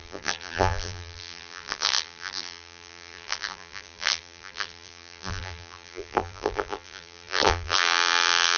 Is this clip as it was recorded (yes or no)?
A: no